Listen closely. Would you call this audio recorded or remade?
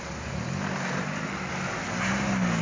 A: recorded